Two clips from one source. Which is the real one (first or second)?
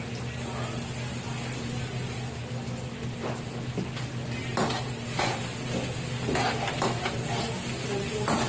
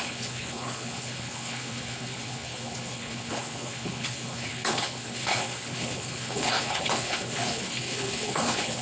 first